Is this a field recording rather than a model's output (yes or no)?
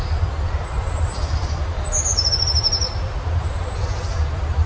no